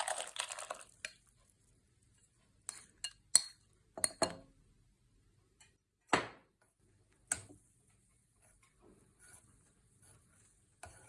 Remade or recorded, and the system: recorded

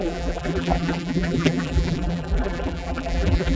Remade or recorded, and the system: remade, vocoder, BigVGAN v2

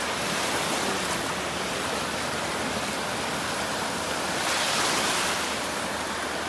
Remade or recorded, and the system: recorded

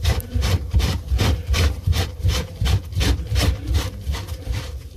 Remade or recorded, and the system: remade, vocoder, BigVGAN v2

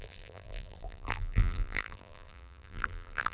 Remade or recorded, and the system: remade, vocoder, BigVGAN v2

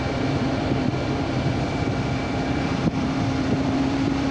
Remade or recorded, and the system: remade, vocoder, BigVGAN v2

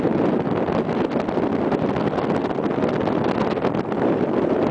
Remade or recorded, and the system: recorded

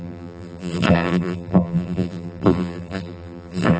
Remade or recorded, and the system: remade, vocoder, BigVGAN v2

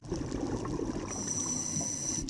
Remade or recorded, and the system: recorded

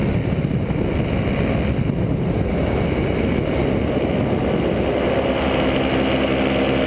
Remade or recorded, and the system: recorded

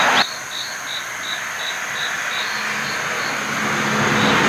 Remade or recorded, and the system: recorded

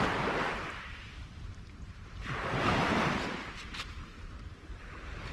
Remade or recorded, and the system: remade, vocoder, BigVGAN v2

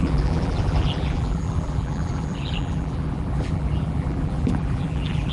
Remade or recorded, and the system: remade, vocoder, BigVGAN v2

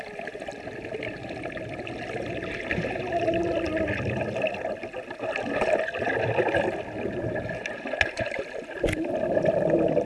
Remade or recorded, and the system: recorded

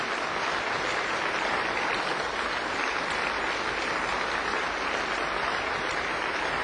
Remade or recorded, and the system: remade, vocoder, BigVGAN v2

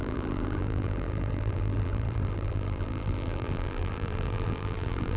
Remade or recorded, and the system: remade, vocoder, BigVGAN v2